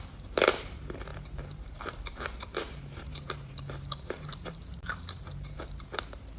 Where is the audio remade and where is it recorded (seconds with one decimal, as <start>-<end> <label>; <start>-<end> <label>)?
0.0-6.4 remade

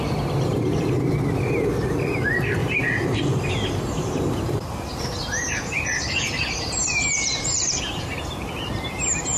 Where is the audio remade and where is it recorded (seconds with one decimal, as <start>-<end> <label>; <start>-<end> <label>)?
0.0-2.6 recorded; 2.6-7.8 remade; 7.8-9.4 recorded

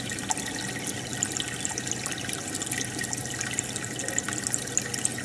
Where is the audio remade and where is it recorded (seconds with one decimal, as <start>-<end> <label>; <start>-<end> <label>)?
0.0-5.2 recorded

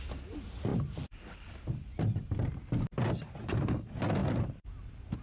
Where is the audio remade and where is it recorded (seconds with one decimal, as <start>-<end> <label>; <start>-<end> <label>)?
0.0-0.7 recorded; 0.7-2.5 remade; 2.5-4.2 recorded; 4.2-5.2 remade